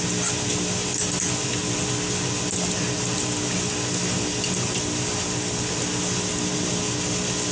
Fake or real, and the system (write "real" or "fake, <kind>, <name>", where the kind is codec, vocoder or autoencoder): real